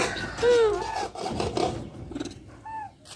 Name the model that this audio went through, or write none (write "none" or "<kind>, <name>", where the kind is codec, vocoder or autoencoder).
none